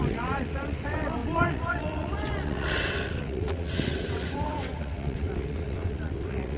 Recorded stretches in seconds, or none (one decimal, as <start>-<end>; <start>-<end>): none